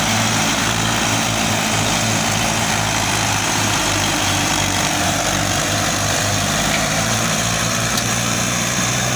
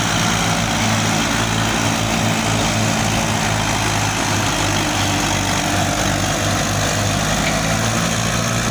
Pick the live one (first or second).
second